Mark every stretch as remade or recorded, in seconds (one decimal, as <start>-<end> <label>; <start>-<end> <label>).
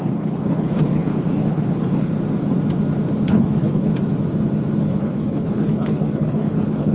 0.0-2.1 remade; 2.1-3.3 recorded; 3.3-3.9 remade; 3.9-4.8 recorded; 4.8-6.9 remade